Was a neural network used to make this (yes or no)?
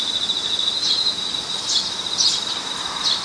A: no